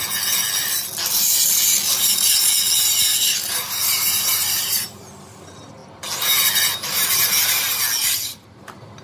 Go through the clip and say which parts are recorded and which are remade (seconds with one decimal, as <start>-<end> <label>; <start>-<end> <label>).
0.0-1.9 recorded; 1.9-2.5 remade; 2.5-2.9 recorded; 2.9-5.1 remade; 5.1-9.0 recorded